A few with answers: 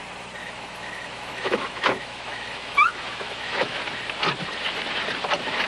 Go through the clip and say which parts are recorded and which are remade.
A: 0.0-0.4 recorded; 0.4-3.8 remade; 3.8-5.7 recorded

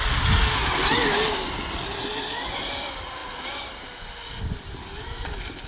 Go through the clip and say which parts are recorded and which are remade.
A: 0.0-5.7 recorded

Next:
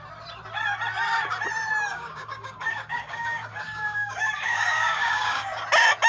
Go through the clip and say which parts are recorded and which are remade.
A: 0.0-1.9 recorded; 1.9-5.6 remade; 5.6-6.1 recorded

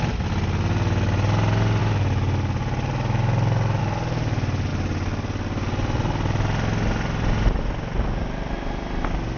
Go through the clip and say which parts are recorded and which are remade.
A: 0.0-9.4 recorded